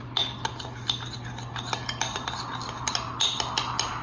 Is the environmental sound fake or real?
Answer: real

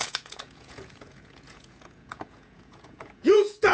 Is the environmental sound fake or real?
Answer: fake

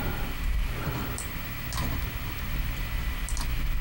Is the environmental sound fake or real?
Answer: real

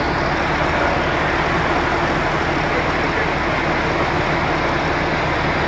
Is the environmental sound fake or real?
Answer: real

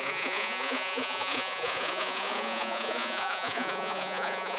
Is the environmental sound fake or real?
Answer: fake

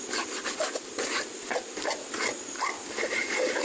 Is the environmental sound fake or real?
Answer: real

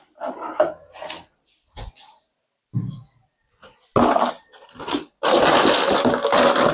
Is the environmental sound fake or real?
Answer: real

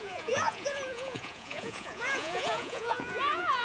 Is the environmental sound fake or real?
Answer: fake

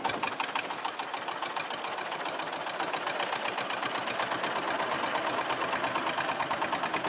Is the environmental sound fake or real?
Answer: real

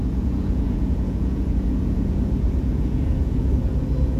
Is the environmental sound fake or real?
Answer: fake